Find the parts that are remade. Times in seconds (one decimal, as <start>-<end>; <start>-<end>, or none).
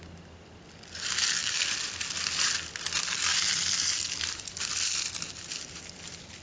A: 1.4-2.5; 3.3-6.4